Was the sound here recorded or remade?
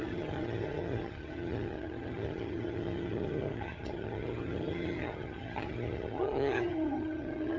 remade